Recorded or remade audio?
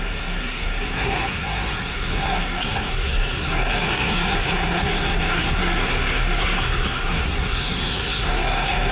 remade